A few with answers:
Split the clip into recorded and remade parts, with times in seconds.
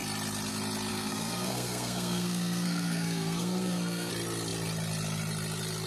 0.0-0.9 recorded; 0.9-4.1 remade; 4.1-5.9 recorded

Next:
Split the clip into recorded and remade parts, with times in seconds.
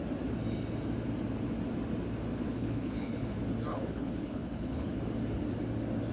0.0-2.4 recorded; 2.4-3.3 remade; 3.3-3.7 recorded; 3.7-4.9 remade; 4.9-6.1 recorded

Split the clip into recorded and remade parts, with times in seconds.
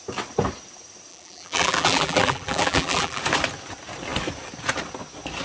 0.0-1.1 recorded; 1.1-3.2 remade; 3.2-5.4 recorded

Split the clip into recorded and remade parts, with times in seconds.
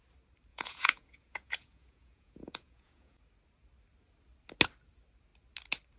0.0-0.5 recorded; 0.5-3.2 remade; 3.2-6.0 recorded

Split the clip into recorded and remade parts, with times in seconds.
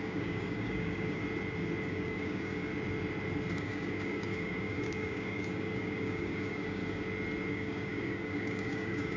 0.0-1.2 remade; 1.2-1.9 recorded; 1.9-2.7 remade; 2.7-3.5 recorded; 3.5-6.8 remade; 6.8-7.5 recorded; 7.5-9.2 remade